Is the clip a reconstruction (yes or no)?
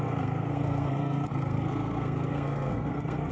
yes